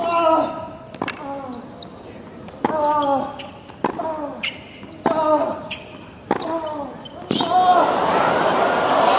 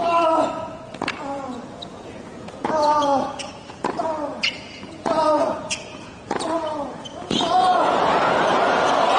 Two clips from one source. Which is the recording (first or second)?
first